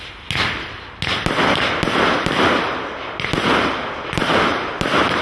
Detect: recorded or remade recorded